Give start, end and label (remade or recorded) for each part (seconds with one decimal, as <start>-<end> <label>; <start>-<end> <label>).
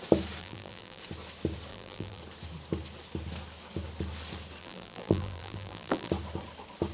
0.0-0.4 recorded; 0.4-1.0 remade; 1.0-1.7 recorded; 1.7-2.2 remade; 2.2-4.6 recorded; 4.6-6.1 remade; 6.1-6.9 recorded